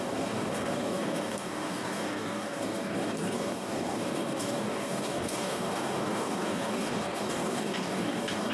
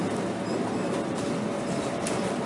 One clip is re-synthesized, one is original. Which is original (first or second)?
second